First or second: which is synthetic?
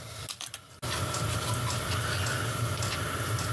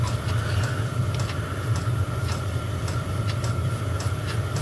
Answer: second